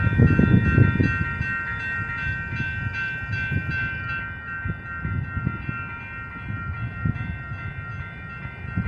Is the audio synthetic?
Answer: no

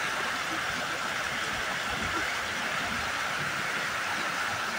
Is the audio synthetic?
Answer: no